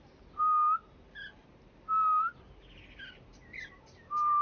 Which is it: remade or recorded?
recorded